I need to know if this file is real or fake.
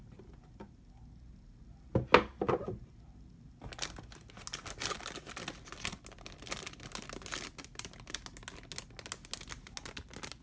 real